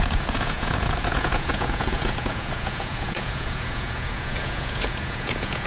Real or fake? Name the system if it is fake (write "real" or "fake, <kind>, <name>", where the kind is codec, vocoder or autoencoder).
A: fake, vocoder, Vocos